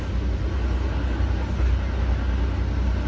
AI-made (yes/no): no